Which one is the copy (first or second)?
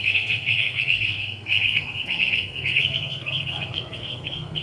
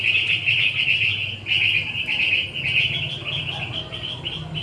first